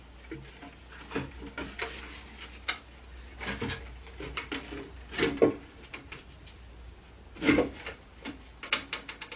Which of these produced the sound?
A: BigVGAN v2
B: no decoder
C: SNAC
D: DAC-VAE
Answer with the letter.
B